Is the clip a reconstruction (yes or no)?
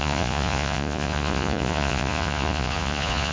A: yes